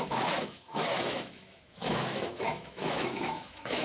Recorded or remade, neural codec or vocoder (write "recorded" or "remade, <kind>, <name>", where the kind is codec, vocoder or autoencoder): remade, autoencoder, DAC-VAE